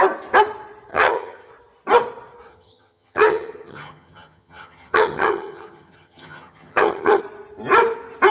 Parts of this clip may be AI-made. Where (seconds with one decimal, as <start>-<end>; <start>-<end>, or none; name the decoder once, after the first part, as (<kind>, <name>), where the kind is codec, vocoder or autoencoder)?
0.9-1.5 (vocoder, HiFi-GAN); 2.5-7.2